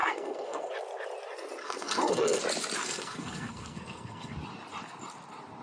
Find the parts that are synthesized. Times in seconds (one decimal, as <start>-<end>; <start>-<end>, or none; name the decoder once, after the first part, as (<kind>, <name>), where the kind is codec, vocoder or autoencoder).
0.0-0.7 (codec, SNAC); 1.6-2.4; 2.8-4.3